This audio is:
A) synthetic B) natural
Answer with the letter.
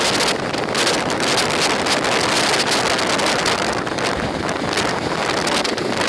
B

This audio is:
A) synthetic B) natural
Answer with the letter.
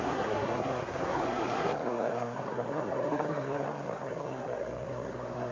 A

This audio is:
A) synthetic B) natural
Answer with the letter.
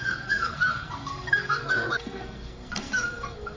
A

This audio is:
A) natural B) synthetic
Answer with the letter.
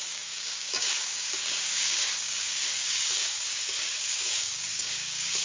B